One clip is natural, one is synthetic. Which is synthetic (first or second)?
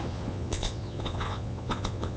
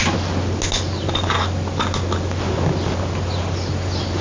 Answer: first